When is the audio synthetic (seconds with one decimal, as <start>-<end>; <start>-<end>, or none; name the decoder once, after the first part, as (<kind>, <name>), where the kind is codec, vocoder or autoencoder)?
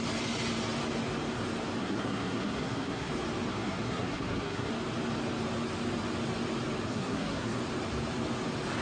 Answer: 1.8-3.1 (codec, SNAC); 3.5-4.7; 6.9-7.6